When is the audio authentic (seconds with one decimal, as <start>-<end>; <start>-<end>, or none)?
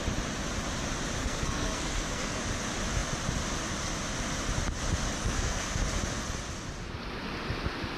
0.0-1.2; 2.4-5.2; 5.8-8.0